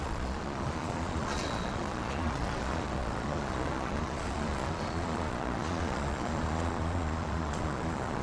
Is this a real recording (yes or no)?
no